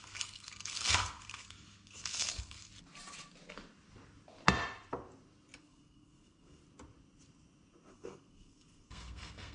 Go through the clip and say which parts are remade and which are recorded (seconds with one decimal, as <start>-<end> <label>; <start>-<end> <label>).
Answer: 0.0-2.7 remade; 2.7-5.6 recorded; 5.6-6.6 remade; 6.6-7.9 recorded; 7.9-9.5 remade